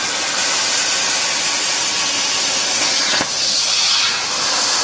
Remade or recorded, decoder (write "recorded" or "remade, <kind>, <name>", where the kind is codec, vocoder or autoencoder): recorded